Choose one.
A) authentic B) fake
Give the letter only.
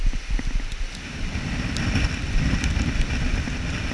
A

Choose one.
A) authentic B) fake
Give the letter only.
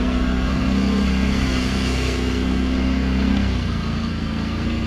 B